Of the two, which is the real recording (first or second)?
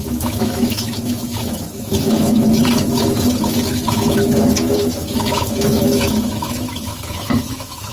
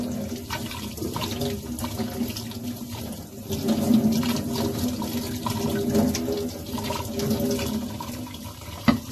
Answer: second